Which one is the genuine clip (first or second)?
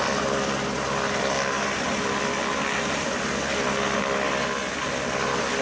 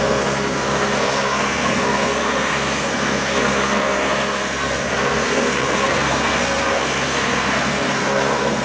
first